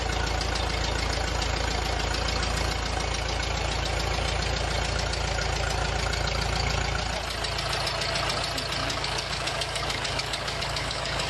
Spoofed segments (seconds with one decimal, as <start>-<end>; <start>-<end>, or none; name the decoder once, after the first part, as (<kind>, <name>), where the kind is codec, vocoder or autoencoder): 8.8-11.3 (codec, DAC)